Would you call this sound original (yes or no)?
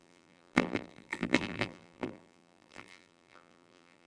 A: no